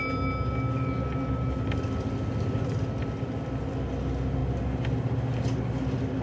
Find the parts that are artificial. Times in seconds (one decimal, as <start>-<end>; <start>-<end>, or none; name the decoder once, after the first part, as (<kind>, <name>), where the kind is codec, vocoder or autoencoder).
none